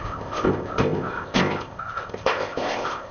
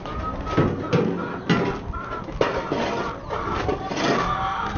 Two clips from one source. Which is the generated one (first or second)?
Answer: first